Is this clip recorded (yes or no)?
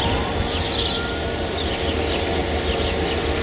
yes